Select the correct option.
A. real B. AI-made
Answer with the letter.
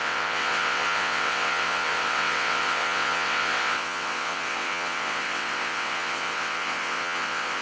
B